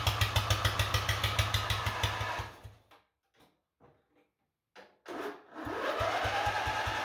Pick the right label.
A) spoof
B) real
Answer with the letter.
B